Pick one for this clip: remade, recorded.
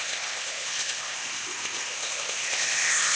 remade